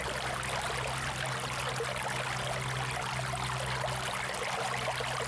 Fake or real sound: real